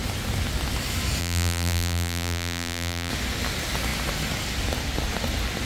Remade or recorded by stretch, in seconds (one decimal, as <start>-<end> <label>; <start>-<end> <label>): 0.0-1.2 recorded; 1.2-3.1 remade; 3.1-5.7 recorded